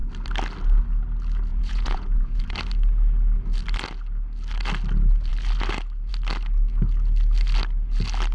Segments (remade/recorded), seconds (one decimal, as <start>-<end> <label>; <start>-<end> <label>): 0.0-1.5 recorded; 1.5-2.4 remade; 2.4-8.3 recorded